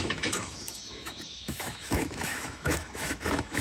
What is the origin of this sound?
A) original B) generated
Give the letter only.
B